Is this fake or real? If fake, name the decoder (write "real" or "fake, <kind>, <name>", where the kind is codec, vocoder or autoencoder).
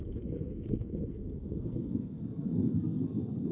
fake, codec, SNAC